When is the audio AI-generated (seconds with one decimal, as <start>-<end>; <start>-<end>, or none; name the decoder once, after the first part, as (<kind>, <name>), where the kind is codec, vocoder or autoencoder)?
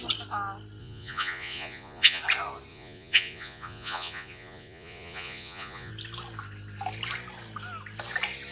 0.8-2.2 (vocoder, Vocos); 2.7-5.9